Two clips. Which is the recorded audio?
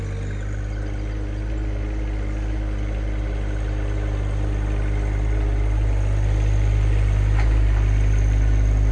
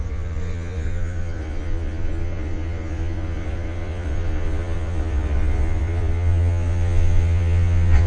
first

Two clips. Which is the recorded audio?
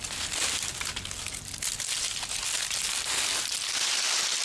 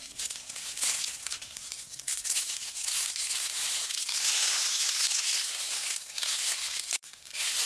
first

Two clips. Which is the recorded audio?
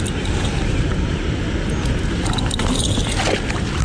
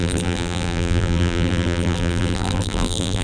first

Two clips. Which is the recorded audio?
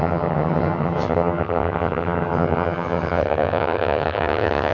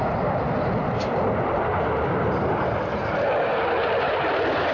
second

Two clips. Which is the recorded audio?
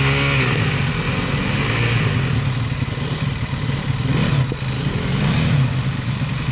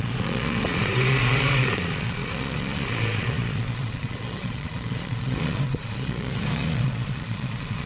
first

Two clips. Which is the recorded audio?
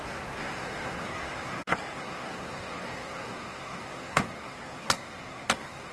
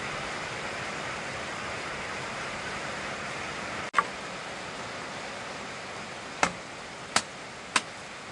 second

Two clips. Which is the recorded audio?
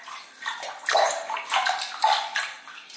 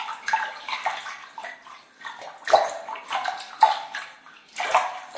second